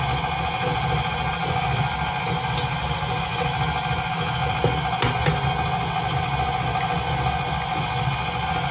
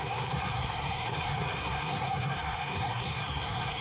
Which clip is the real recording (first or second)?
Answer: first